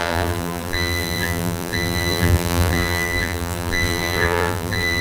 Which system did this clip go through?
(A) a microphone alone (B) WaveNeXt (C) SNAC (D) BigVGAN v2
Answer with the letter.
D